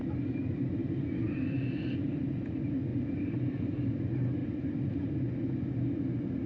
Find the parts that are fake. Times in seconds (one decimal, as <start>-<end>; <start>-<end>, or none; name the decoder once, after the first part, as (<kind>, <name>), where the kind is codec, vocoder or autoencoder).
0.8-2.5 (vocoder, BigVGAN v2); 2.9-3.9; 4.4-5.1